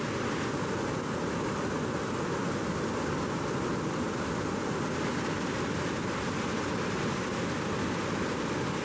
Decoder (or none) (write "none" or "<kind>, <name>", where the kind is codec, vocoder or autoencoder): none